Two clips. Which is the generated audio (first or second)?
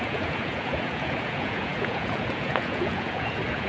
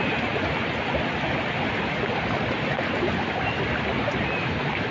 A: first